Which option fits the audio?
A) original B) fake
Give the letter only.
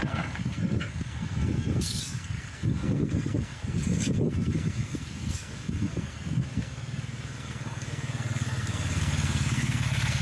B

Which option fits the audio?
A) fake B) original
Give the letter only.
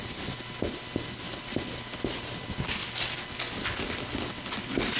B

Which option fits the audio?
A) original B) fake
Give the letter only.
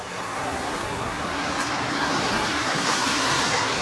B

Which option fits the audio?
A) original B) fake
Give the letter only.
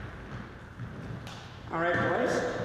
A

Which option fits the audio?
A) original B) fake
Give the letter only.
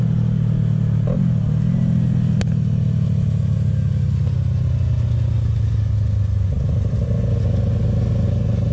A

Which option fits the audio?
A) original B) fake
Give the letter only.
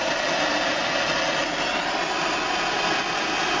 A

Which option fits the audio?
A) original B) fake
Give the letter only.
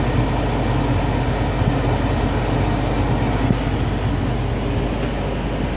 A